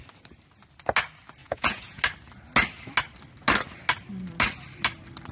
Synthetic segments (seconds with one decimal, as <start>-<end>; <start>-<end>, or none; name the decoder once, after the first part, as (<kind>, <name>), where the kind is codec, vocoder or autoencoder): 1.4-2.0 (vocoder, Vocos)